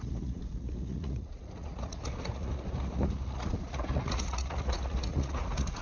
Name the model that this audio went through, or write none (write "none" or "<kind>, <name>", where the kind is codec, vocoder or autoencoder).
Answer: vocoder, Vocos